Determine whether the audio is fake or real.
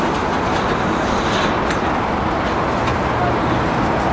real